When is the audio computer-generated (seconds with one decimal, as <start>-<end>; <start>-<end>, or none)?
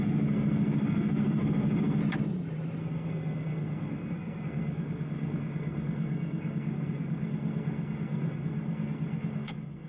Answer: 0.0-2.0; 2.8-9.9